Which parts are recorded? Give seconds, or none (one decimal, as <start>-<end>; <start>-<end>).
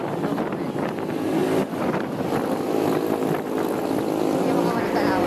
0.0-5.3